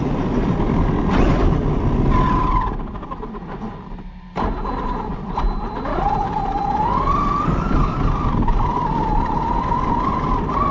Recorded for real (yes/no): yes